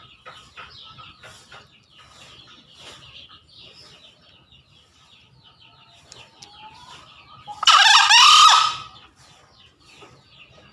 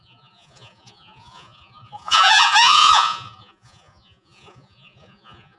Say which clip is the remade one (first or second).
second